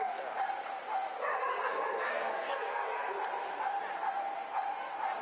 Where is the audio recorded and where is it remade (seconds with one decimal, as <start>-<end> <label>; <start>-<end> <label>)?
0.0-1.5 recorded; 1.5-3.1 remade; 3.1-5.2 recorded